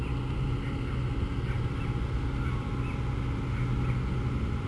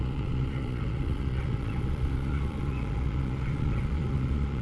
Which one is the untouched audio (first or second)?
first